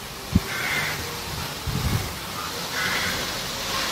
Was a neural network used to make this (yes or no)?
no